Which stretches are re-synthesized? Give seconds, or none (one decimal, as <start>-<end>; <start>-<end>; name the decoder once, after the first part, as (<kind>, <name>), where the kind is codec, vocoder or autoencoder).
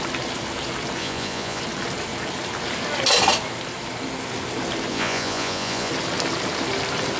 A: 1.0-1.6 (vocoder, Vocos); 4.9-5.9